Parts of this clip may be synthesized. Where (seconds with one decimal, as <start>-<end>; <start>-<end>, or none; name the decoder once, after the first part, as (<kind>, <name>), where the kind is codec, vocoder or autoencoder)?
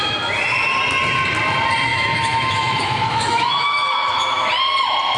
1.9-4.5 (autoencoder, DAC-VAE)